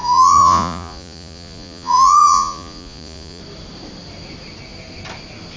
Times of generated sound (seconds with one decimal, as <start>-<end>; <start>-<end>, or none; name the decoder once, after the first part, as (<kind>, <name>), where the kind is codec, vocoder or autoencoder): 0.0-3.4 (vocoder, Vocos)